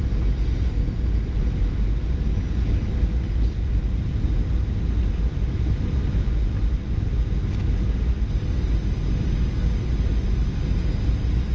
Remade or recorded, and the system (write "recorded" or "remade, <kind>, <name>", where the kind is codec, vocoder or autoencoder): recorded